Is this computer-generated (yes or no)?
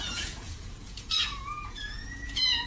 yes